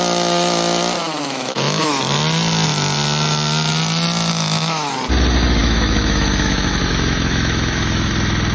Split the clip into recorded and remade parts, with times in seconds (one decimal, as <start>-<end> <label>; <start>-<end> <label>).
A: 0.0-1.2 recorded; 1.2-1.9 remade; 1.9-4.3 recorded; 4.3-4.9 remade; 4.9-5.6 recorded; 5.6-8.1 remade; 8.1-8.5 recorded